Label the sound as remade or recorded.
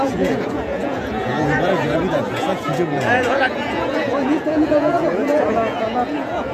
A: remade